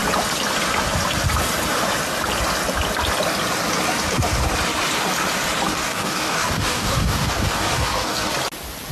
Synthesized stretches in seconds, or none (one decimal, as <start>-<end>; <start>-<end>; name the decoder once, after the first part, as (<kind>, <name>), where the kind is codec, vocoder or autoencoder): 5.7-8.3 (codec, DAC)